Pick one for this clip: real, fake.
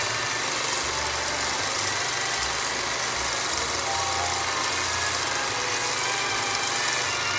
real